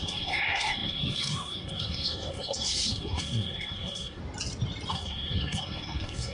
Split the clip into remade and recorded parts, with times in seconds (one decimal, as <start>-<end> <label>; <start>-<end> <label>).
0.0-4.2 remade; 4.2-4.9 recorded; 4.9-6.3 remade